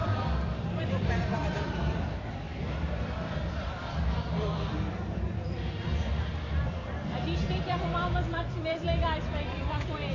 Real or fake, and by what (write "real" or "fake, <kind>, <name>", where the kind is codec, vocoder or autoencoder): fake, vocoder, BigVGAN v2